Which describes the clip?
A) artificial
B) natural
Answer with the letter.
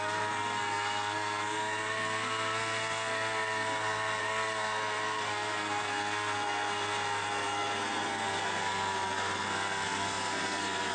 A